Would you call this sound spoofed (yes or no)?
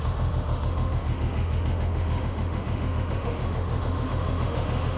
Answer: yes